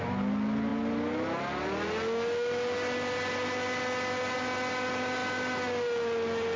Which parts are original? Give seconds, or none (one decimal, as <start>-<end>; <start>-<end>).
0.0-6.6